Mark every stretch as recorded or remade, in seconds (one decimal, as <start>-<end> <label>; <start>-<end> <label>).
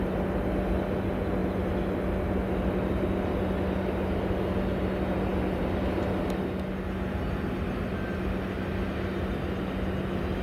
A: 0.0-10.4 recorded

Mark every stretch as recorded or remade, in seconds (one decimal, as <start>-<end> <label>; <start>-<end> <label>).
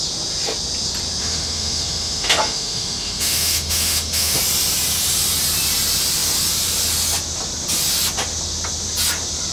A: 0.0-1.2 recorded; 1.2-4.4 remade; 4.4-9.5 recorded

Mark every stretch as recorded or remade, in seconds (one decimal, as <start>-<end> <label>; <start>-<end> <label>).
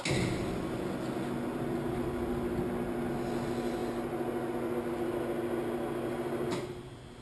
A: 0.0-7.2 recorded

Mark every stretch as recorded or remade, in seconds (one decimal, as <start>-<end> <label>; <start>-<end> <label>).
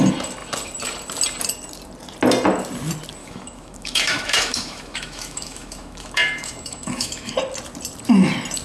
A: 0.0-3.2 recorded; 3.2-7.3 remade; 7.3-8.6 recorded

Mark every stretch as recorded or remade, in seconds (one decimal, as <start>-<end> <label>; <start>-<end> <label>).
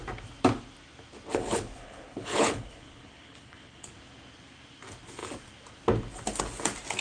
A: 0.0-1.3 recorded; 1.3-3.9 remade; 3.9-7.0 recorded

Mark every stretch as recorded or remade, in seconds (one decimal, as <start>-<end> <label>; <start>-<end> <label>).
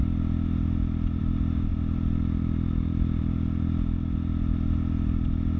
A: 0.0-5.6 recorded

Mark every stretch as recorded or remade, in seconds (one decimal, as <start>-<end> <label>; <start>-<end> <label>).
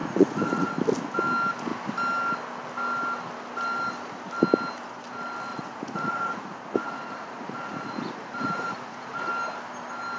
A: 0.0-0.7 remade; 0.7-5.5 recorded; 5.5-9.3 remade; 9.3-10.2 recorded